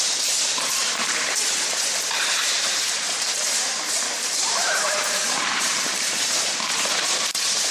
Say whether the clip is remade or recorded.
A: remade